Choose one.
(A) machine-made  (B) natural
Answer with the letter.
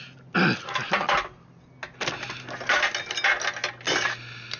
B